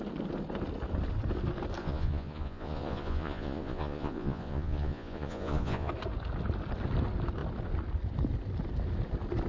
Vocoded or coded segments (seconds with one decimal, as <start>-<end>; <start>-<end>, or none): 1.8-5.9